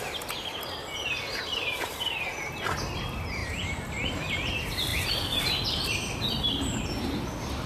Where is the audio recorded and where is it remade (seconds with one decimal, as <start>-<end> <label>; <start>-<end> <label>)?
0.0-4.9 recorded; 4.9-6.6 remade; 6.6-7.7 recorded